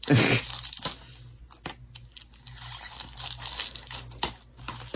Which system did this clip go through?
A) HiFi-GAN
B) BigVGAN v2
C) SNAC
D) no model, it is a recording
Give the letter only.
D